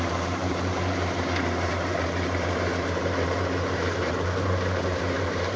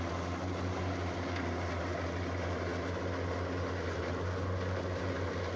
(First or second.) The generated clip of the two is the first